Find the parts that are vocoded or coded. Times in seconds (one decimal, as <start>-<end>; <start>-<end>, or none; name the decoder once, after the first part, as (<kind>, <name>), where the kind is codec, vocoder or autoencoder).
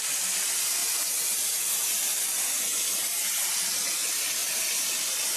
0.8-1.6 (vocoder, BigVGAN v2); 4.4-5.4